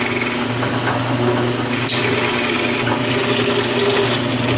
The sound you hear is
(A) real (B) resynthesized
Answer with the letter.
A